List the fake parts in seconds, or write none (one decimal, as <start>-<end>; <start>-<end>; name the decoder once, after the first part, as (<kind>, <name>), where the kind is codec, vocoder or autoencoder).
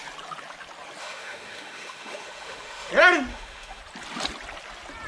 1.0-2.9 (autoencoder, DAC-VAE); 3.3-3.8